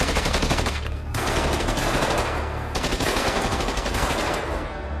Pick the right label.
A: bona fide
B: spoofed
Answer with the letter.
B